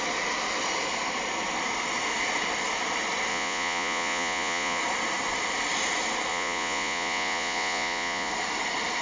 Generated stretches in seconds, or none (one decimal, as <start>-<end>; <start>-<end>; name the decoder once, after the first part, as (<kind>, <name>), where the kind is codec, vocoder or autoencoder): 3.3-4.8 (vocoder, Vocos); 6.3-8.3